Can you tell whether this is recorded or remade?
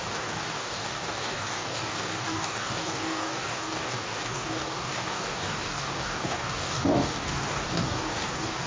remade